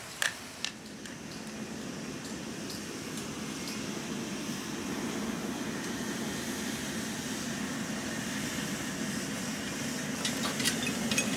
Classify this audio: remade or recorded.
recorded